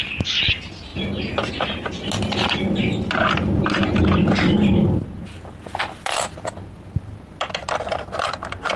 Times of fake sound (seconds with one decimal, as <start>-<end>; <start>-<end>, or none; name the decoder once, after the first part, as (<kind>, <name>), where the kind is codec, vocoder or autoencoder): none